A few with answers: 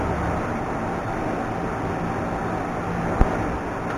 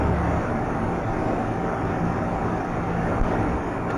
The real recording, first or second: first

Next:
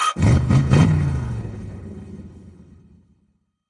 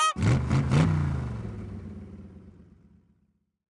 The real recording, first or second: second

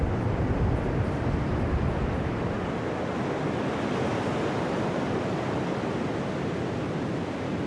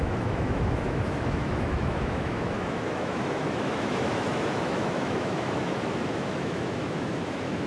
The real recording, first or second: first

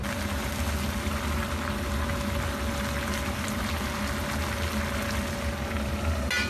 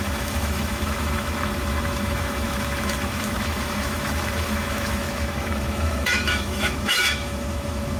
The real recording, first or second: first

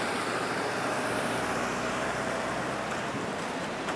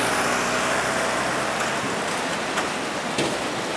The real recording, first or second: second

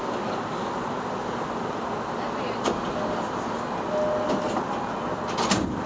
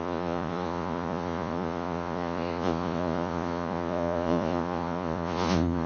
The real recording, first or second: first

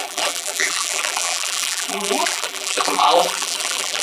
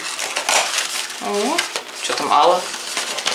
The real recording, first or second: second